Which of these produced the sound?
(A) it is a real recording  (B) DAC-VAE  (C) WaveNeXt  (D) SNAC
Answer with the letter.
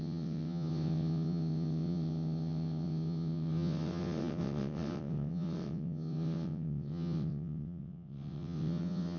C